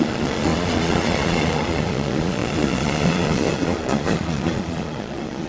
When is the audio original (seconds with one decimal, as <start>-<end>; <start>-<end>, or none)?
none